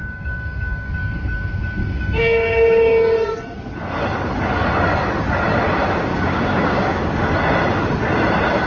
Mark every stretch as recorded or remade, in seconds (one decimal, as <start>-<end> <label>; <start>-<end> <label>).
0.0-0.9 remade; 0.9-1.8 recorded; 1.8-3.3 remade; 3.3-6.1 recorded; 6.1-7.2 remade; 7.2-8.7 recorded